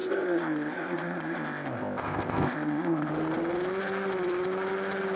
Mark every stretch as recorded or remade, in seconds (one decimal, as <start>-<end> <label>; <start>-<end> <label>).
0.0-3.1 remade; 3.1-5.2 recorded